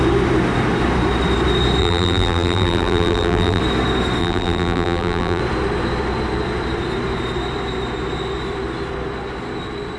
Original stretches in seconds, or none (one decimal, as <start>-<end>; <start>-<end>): 0.0-1.8; 3.6-4.2; 5.4-10.0